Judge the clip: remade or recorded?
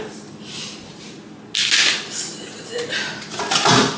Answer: recorded